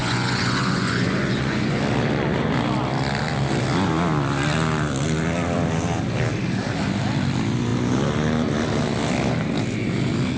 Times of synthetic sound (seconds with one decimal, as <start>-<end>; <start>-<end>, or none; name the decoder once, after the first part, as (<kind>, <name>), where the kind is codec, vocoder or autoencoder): 0.0-1.8 (vocoder, Vocos)